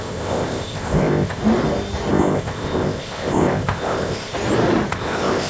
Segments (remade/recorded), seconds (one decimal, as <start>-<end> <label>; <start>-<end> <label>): 0.0-1.4 remade; 1.4-2.1 recorded; 2.1-4.3 remade; 4.3-4.9 recorded; 4.9-5.5 remade